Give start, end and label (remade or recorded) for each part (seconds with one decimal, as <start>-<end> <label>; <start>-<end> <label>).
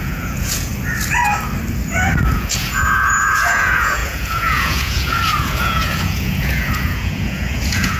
0.0-0.7 remade; 0.7-2.3 recorded; 2.3-8.0 remade